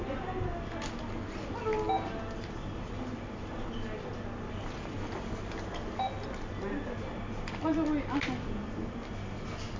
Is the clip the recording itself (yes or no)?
yes